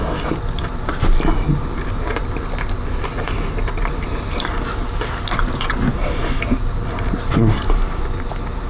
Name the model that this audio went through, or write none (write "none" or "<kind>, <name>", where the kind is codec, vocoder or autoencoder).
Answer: none